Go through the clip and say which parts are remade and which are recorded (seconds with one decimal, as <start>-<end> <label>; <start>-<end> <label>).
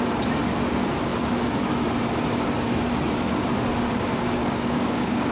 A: 0.0-4.4 recorded; 4.4-5.3 remade